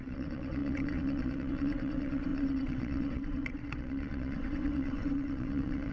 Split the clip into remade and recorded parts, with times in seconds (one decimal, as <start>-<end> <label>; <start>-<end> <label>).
0.0-5.9 remade